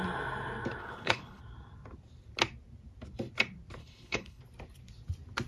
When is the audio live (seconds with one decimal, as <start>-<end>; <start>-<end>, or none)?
0.0-0.8; 1.4-3.8; 4.4-5.5